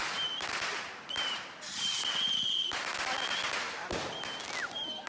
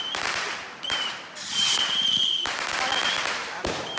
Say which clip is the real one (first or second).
first